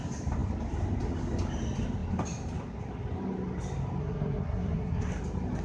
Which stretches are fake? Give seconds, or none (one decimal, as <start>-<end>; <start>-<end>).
4.0-5.1